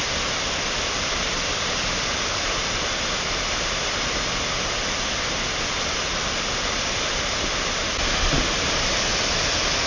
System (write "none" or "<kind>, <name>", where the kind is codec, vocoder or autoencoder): vocoder, BigVGAN v2